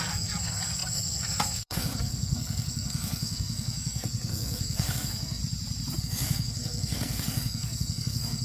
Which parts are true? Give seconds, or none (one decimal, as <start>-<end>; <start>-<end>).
5.4-6.0

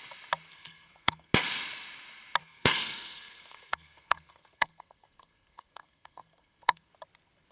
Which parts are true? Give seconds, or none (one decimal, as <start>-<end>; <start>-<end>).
0.0-0.5; 1.3-2.4; 6.9-7.5